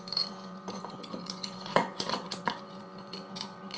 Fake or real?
fake